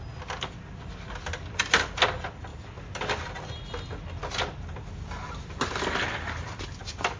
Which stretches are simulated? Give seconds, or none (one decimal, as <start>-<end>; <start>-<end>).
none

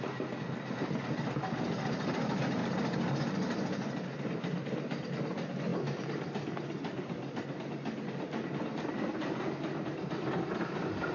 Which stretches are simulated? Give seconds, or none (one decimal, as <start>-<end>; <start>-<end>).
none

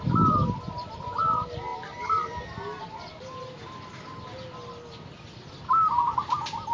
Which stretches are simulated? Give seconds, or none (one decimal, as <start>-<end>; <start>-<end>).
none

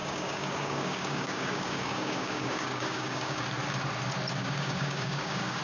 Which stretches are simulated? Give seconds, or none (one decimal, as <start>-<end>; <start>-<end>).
0.0-3.4; 4.4-5.6

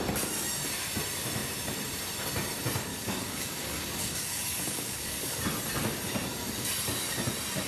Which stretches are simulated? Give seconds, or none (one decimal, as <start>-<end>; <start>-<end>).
2.9-5.4

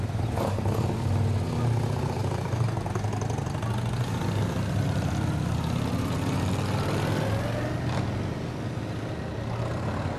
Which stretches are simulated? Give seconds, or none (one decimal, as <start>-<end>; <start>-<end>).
none

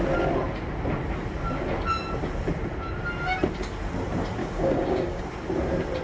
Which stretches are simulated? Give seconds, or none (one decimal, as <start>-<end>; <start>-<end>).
4.4-5.2